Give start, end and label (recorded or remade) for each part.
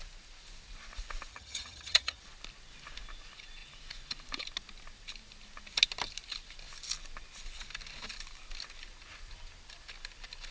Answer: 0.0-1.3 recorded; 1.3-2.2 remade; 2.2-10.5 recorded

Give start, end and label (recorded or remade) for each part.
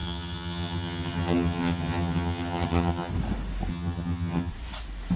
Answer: 0.0-3.1 remade; 3.1-3.7 recorded; 3.7-4.5 remade; 4.5-5.2 recorded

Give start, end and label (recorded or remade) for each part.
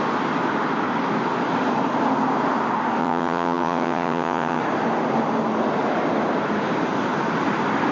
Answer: 0.0-3.0 recorded; 3.0-4.6 remade; 4.6-7.9 recorded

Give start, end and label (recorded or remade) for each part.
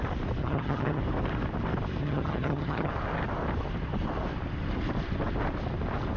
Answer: 0.0-0.4 recorded; 0.4-1.0 remade; 1.0-2.0 recorded; 2.0-2.9 remade; 2.9-6.2 recorded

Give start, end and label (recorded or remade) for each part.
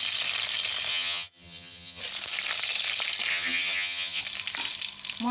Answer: 0.0-0.9 recorded; 0.9-2.0 remade; 2.0-3.3 recorded; 3.3-4.2 remade; 4.2-5.3 recorded